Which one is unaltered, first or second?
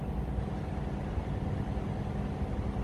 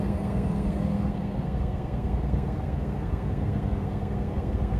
first